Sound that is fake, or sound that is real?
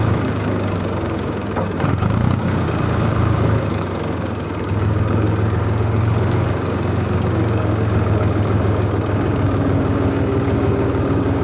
fake